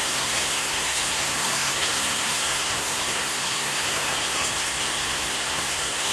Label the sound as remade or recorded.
remade